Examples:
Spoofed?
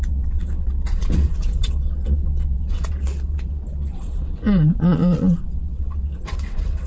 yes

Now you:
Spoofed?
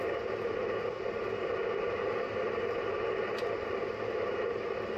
no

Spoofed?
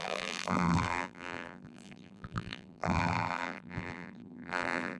yes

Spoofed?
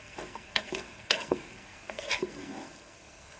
yes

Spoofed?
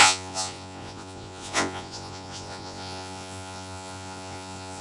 yes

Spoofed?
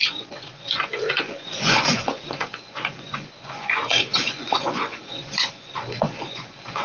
yes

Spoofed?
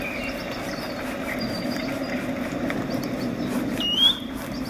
no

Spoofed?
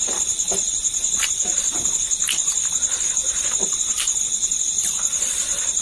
no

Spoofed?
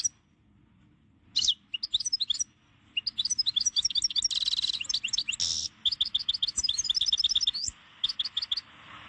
no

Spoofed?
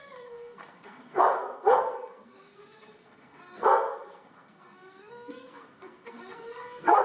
yes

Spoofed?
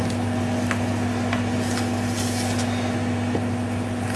no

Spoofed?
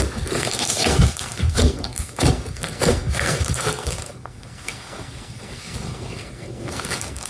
yes